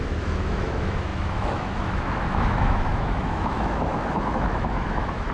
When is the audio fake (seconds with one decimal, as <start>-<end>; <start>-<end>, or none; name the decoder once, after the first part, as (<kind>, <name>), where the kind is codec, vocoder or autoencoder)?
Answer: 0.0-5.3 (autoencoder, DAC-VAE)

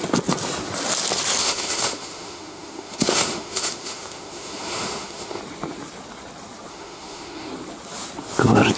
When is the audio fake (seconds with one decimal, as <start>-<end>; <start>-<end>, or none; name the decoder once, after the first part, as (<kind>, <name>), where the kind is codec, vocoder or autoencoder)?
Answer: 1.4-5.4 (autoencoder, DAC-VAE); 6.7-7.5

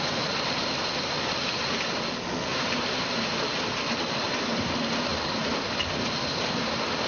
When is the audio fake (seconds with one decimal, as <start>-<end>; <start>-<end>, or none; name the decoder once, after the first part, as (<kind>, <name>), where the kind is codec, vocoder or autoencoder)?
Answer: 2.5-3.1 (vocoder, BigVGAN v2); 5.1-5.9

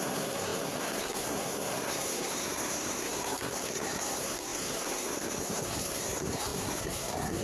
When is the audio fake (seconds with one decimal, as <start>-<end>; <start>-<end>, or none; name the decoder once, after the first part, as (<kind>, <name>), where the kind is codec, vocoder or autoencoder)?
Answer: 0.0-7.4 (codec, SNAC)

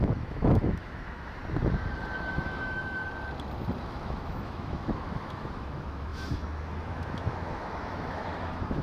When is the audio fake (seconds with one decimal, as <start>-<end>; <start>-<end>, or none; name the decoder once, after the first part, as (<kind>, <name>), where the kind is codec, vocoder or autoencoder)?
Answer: 0.0-1.4 (autoencoder, DAC-VAE); 2.3-3.0; 3.8-8.8